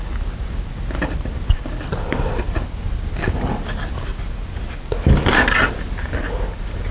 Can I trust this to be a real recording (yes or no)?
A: yes